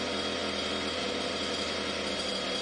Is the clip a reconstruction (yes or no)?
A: no